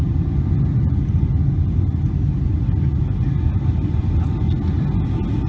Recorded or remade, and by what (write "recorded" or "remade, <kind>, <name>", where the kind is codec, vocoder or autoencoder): recorded